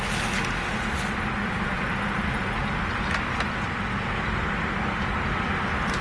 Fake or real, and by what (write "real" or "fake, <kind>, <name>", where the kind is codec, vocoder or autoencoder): real